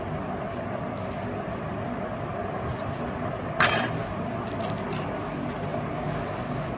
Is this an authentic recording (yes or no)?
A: yes